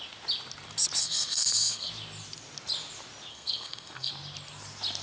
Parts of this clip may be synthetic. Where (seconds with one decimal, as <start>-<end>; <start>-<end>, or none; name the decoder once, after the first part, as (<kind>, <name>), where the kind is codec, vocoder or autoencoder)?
1.0-1.9 (codec, SNAC); 3.3-4.1